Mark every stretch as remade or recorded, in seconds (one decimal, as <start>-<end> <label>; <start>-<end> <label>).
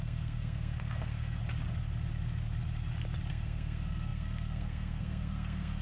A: 0.0-1.4 remade; 1.4-3.3 recorded; 3.3-5.8 remade